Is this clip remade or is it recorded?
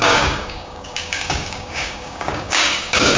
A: remade